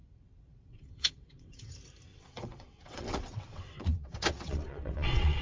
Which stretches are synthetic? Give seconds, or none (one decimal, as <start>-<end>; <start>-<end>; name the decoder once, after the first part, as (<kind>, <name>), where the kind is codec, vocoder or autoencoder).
0.0-1.7 (vocoder, WaveNeXt); 2.1-5.4

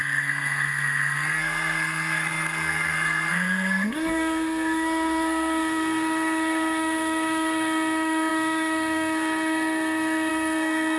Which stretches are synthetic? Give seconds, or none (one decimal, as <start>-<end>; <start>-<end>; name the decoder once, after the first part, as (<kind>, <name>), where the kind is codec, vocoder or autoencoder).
0.0-11.0 (codec, SNAC)